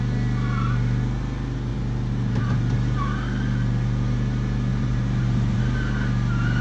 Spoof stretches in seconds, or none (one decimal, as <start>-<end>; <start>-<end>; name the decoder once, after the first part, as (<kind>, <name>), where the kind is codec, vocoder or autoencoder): 1.7-2.4 (vocoder, BigVGAN v2); 4.7-5.6

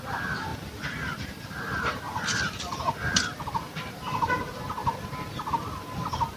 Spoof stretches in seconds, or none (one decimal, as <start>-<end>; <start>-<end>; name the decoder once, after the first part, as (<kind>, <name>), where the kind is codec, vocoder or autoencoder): 0.5-4.3 (vocoder, BigVGAN v2)

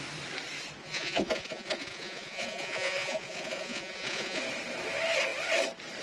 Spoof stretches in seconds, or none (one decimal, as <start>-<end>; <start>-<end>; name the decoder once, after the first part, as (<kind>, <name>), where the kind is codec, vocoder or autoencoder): 0.8-4.4 (vocoder, Vocos)

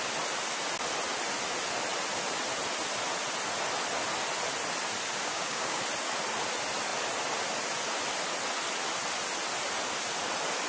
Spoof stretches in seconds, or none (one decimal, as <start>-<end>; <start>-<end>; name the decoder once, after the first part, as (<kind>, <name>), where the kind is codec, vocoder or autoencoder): 5.2-5.8 (codec, DAC)

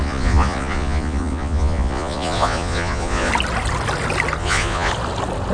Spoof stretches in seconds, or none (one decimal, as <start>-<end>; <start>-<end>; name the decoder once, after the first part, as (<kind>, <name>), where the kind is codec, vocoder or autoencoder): 0.0-3.3 (vocoder, Vocos); 4.4-4.9

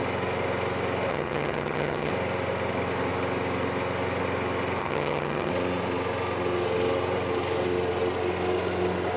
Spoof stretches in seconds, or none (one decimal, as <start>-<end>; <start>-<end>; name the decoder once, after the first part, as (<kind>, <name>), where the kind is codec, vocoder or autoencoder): 1.1-2.1 (vocoder, HiFi-GAN); 4.8-5.5

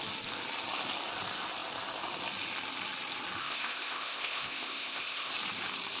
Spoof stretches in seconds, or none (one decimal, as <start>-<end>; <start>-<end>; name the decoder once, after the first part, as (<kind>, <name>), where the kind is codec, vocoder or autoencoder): 3.4-5.3 (codec, ZipCodec)

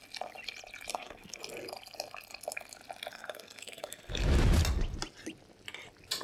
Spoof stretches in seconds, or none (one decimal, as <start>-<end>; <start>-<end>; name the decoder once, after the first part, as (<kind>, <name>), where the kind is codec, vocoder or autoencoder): 0.9-1.4 (codec, SNAC); 3.1-4.1